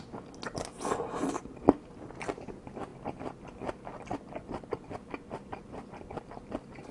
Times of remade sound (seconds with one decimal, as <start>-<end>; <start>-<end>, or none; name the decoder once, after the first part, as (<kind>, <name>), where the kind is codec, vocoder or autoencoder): none